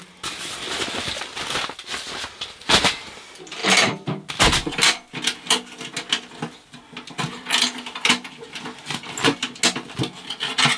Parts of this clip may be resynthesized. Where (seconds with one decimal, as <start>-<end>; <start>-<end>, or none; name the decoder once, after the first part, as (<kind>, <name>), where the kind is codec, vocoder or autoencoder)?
none